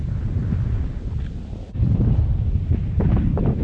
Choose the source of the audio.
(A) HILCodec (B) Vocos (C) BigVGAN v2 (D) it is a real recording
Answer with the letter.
D